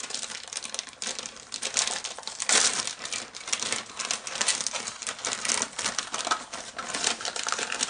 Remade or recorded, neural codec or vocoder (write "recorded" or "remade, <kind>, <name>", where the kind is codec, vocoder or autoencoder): recorded